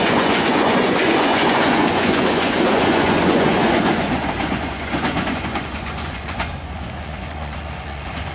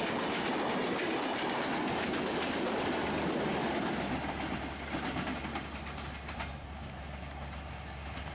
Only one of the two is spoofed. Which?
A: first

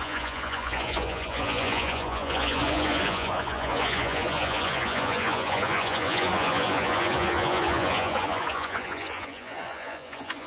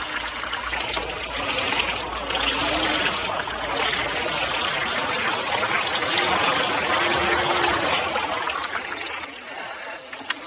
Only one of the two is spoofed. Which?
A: first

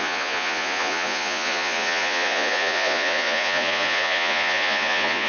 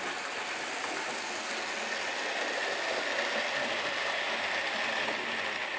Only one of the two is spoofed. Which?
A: first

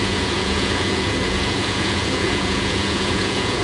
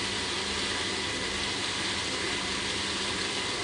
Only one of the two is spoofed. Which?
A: first